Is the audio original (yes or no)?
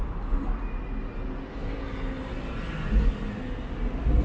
yes